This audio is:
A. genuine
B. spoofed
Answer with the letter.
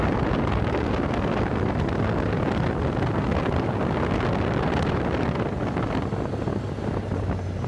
A